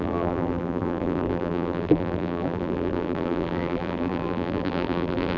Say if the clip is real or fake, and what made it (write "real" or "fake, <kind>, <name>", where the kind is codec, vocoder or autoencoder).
fake, vocoder, BigVGAN v2